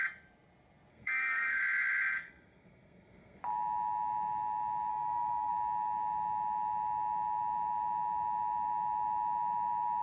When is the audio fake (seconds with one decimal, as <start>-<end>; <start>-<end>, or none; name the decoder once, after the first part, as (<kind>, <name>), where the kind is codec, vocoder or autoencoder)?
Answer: 0.9-1.6 (codec, SNAC); 2.1-3.4; 4.9-5.5